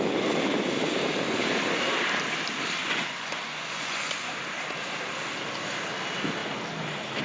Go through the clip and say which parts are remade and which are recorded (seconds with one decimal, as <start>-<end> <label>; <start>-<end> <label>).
0.0-2.8 recorded; 2.8-4.3 remade; 4.3-7.2 recorded